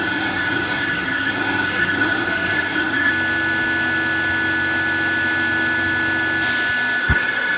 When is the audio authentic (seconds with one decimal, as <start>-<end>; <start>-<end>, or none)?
3.1-7.0